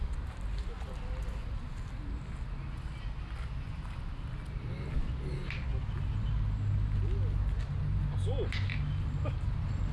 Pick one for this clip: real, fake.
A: real